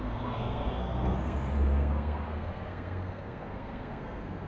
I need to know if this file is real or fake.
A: fake